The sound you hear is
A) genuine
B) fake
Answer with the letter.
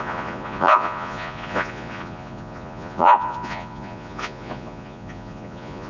B